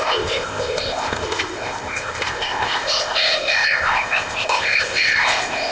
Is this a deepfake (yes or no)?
yes